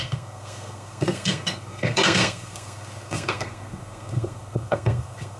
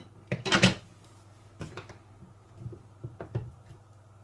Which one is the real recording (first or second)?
second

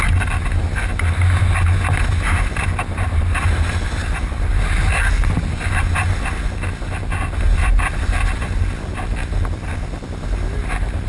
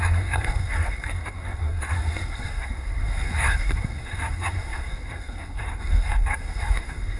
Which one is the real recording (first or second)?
first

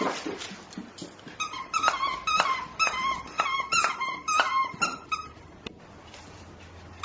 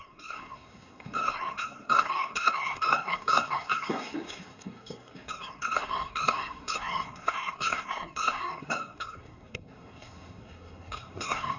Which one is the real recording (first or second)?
first